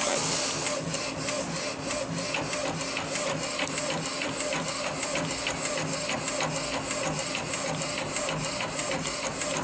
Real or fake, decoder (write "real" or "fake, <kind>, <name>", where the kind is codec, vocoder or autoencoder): real